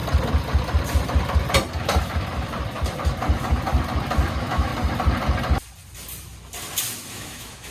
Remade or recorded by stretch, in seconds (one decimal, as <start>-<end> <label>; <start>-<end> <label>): 0.0-4.3 recorded; 4.3-4.7 remade; 4.7-7.1 recorded; 7.1-7.7 remade